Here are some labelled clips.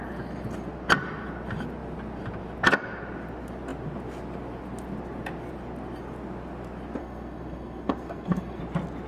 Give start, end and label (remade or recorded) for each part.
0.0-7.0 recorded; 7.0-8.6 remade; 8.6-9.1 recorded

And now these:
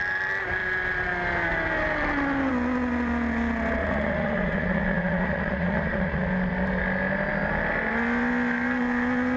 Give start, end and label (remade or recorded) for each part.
0.0-3.8 recorded; 3.8-6.3 remade; 6.3-9.4 recorded

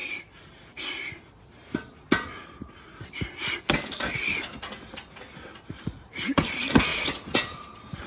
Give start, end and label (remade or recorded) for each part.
0.0-8.1 recorded

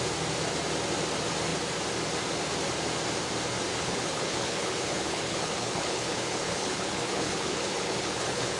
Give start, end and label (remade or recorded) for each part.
0.0-3.7 recorded; 3.7-8.6 remade

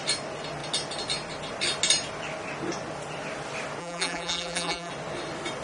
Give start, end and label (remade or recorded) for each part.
0.0-3.8 recorded; 3.8-4.9 remade; 4.9-5.6 recorded